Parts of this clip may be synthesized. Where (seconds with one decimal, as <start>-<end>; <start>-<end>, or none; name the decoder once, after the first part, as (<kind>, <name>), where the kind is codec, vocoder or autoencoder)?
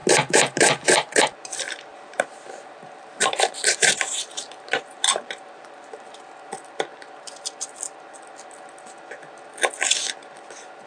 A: 0.0-1.2 (vocoder, BigVGAN v2); 1.9-6.3